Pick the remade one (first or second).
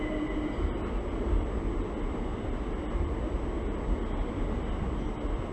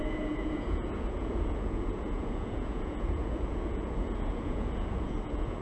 second